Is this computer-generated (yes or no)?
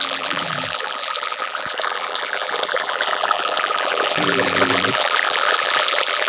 yes